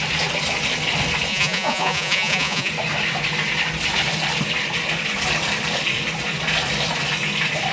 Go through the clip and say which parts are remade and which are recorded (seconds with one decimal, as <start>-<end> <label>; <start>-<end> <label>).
0.0-1.3 recorded; 1.3-2.7 remade; 2.7-7.7 recorded